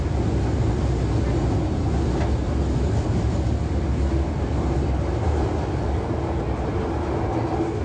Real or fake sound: real